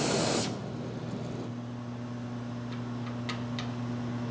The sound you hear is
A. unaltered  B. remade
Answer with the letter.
A